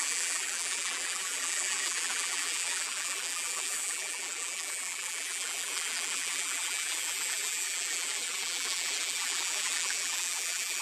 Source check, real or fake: fake